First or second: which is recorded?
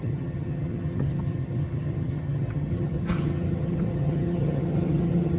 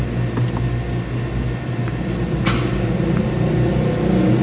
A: second